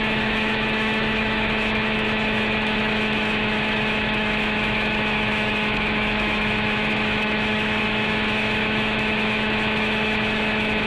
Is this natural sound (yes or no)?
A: no